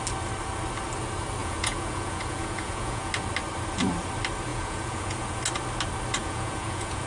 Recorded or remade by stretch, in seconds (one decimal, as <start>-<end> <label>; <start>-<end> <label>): 0.0-1.4 recorded; 1.4-3.1 remade; 3.1-4.5 recorded; 4.5-5.4 remade; 5.4-6.2 recorded; 6.2-7.1 remade